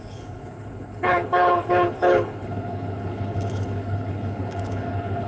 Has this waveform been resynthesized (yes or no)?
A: yes